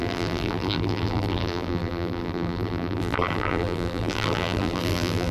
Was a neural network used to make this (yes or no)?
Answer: yes